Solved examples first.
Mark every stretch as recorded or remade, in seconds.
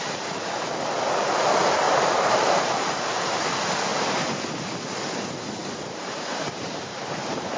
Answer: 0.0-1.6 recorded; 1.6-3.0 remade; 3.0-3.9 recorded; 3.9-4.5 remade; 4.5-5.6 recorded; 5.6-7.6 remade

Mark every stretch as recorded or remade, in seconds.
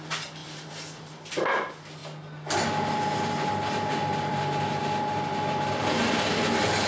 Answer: 0.0-0.4 recorded; 0.4-1.3 remade; 1.3-4.0 recorded; 4.0-4.8 remade; 4.8-6.9 recorded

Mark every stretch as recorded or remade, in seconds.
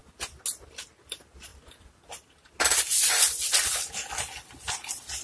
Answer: 0.0-5.2 recorded